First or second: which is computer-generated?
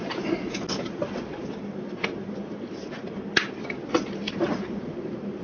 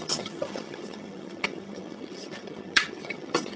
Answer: second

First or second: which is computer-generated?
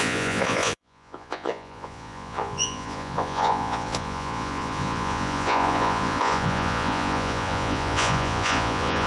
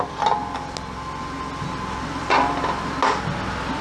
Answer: first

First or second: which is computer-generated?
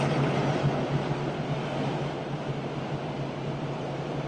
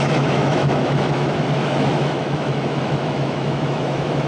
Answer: second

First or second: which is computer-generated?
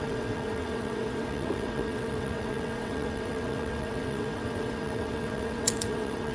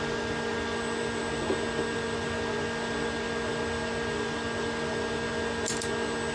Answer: first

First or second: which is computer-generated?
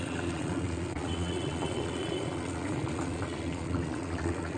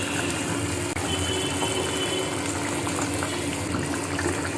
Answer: first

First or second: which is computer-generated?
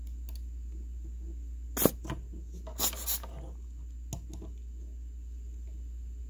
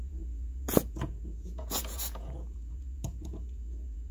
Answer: second